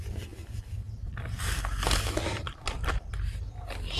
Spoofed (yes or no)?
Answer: no